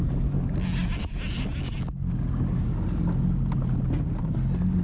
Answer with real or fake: real